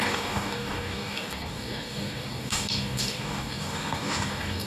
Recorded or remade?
remade